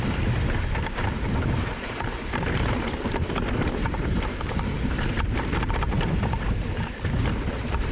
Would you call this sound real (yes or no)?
no